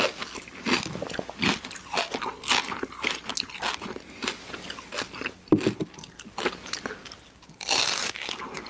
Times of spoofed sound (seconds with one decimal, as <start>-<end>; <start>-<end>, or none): none